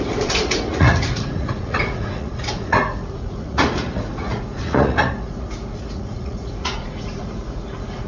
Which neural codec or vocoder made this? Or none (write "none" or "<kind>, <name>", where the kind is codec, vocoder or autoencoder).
vocoder, Vocos